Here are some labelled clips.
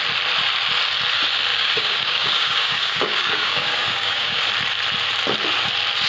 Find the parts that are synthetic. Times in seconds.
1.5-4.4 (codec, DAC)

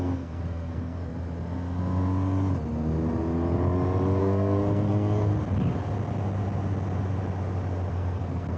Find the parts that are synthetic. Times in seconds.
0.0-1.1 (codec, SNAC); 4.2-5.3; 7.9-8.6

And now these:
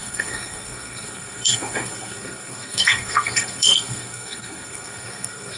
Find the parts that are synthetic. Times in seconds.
0.0-5.6 (codec, SNAC)

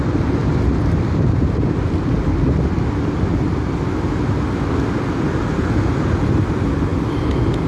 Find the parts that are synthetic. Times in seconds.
none

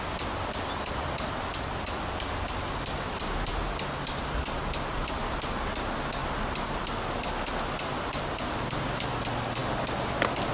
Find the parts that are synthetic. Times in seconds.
none